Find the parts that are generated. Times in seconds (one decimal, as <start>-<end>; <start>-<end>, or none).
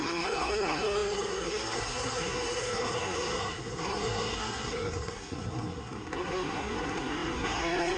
0.0-8.0